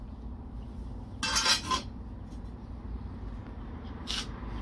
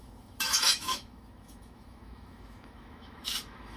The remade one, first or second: second